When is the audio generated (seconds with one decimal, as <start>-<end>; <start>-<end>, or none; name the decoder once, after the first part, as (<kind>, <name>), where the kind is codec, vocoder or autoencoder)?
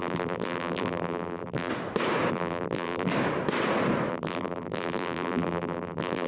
0.0-1.7 (vocoder, BigVGAN v2); 2.3-3.1; 4.1-6.3